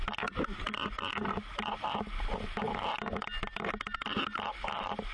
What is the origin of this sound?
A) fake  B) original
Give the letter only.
B